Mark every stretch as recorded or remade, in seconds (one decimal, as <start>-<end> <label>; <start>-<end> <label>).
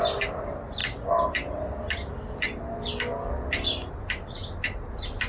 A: 0.0-5.3 recorded